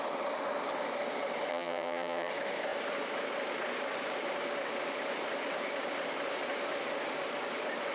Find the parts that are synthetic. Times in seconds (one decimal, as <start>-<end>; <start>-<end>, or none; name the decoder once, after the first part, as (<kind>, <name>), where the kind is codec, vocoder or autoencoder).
1.5-2.3 (vocoder, HiFi-GAN)